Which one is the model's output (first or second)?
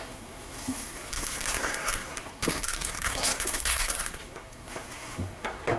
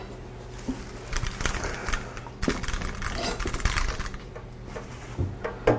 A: first